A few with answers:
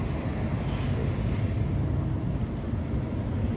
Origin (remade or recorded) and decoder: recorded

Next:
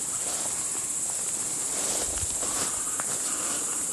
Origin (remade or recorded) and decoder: remade, vocoder, BigVGAN v2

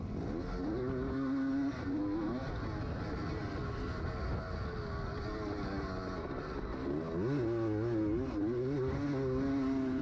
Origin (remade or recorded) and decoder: recorded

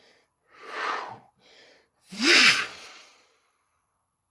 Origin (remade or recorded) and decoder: remade, vocoder, Vocos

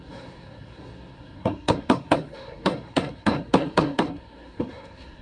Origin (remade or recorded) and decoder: remade, codec, SNAC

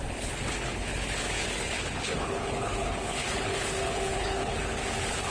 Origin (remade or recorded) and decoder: remade, codec, HILCodec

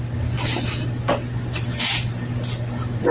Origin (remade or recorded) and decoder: recorded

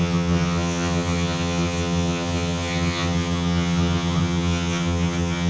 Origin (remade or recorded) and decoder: remade, vocoder, HiFi-GAN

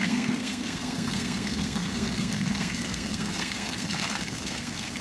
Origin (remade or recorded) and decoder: remade, codec, SNAC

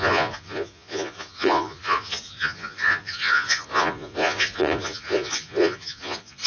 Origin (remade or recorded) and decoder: remade, vocoder, Vocos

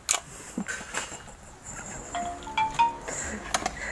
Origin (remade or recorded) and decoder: recorded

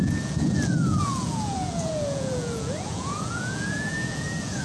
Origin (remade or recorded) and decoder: remade, vocoder, Vocos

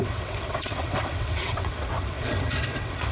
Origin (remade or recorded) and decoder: remade, vocoder, WaveNeXt